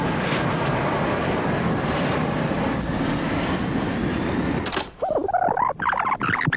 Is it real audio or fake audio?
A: real